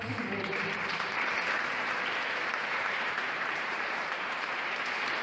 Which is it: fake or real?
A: fake